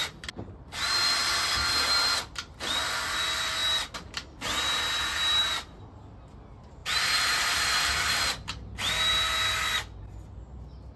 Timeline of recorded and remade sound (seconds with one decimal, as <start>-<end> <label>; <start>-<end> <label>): 0.0-6.8 recorded; 6.8-8.2 remade; 8.2-11.0 recorded